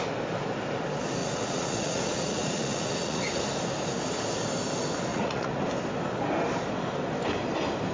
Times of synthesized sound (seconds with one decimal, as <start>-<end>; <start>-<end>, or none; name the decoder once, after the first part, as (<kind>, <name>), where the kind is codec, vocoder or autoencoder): 1.2-3.4 (vocoder, Vocos); 5.1-5.6